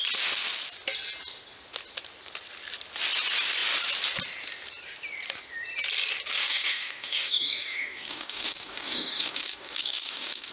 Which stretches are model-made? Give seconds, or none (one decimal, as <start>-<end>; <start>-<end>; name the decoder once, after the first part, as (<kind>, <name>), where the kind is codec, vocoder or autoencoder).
6.4-10.5 (codec, DAC)